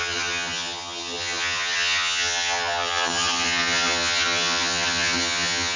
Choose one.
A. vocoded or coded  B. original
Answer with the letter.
A